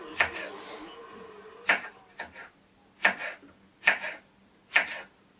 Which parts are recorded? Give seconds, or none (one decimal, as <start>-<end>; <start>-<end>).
0.0-1.0; 1.9-5.4